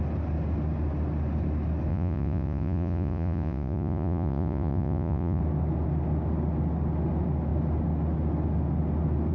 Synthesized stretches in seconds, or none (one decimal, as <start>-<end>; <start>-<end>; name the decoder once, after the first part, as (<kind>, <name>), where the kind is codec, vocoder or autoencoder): 1.9-5.4 (vocoder, Vocos)